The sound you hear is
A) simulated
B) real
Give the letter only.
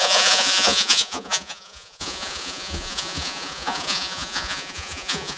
A